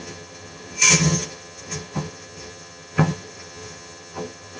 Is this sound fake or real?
fake